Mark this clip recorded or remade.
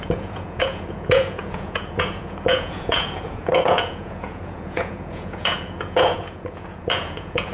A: remade